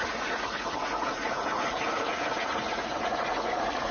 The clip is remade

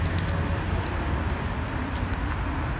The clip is recorded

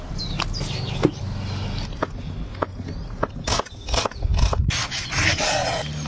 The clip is recorded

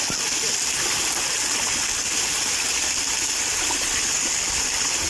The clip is recorded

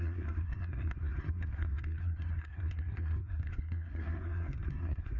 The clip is remade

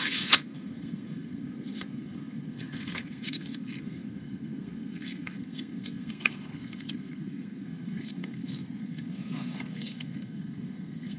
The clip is remade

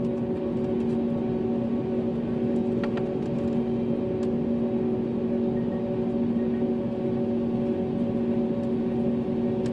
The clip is recorded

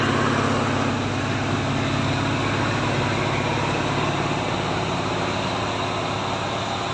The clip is recorded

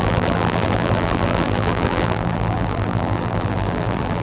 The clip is remade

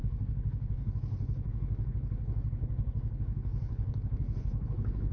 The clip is remade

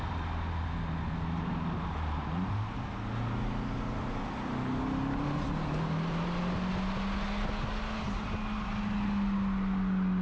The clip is recorded